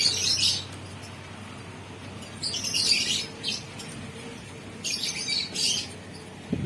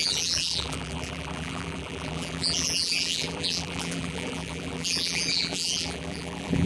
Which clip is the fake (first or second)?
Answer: second